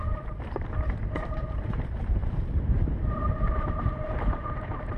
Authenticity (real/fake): fake